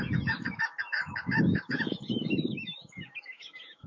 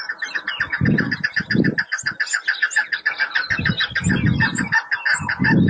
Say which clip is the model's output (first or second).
first